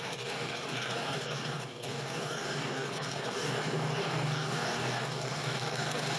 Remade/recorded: remade